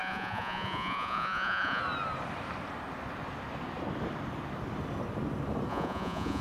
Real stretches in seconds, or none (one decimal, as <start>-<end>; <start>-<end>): 1.8-5.7